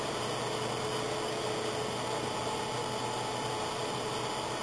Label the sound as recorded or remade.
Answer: recorded